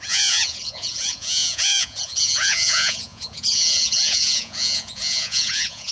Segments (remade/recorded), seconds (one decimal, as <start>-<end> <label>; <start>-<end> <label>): 0.0-5.9 remade